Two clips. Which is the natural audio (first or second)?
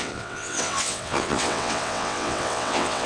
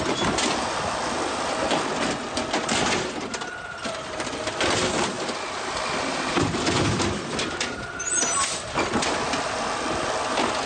second